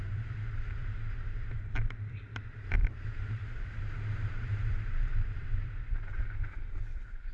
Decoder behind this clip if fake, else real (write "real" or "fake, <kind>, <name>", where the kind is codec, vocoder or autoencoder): fake, vocoder, BigVGAN v2